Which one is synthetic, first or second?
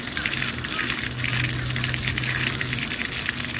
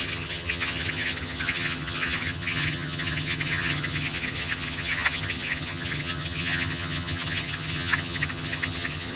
second